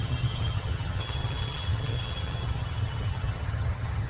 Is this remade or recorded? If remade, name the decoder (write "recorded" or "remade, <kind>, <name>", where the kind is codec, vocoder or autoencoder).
remade, vocoder, HiFi-GAN